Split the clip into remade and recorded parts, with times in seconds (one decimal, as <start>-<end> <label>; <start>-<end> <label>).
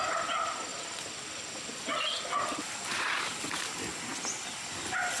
0.0-5.2 recorded